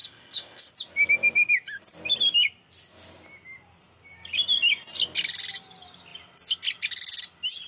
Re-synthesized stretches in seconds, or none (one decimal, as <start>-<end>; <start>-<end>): 0.0-0.7